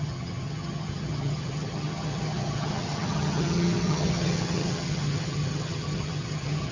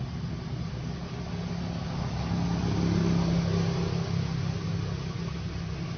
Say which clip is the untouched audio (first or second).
second